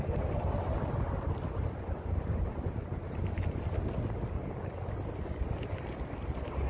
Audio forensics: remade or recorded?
recorded